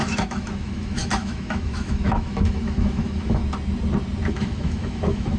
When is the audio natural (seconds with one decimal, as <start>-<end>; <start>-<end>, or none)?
3.4-4.3